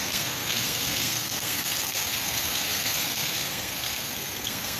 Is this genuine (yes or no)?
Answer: no